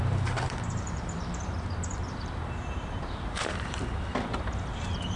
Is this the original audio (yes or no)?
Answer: no